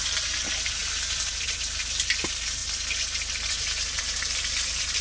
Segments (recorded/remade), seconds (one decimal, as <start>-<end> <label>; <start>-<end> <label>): 0.0-5.0 recorded